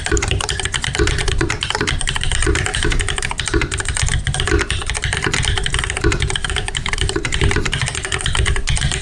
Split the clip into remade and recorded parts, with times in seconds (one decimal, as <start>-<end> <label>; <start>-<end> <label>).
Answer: 0.0-2.7 recorded; 2.7-3.3 remade; 3.3-6.4 recorded; 6.4-6.9 remade; 6.9-9.0 recorded